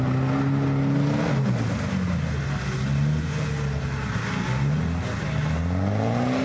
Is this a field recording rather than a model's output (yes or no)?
yes